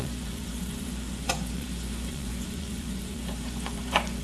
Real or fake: fake